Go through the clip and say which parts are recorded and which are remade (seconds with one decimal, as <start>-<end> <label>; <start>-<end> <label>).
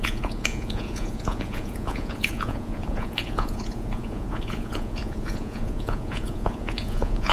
0.0-7.3 remade